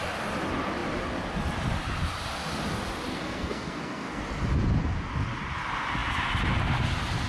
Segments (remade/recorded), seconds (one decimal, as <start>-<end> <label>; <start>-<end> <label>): 0.0-3.1 recorded; 3.1-4.2 remade; 4.2-7.3 recorded